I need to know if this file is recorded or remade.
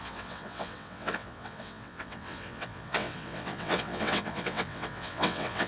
remade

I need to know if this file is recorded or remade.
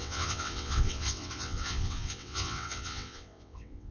remade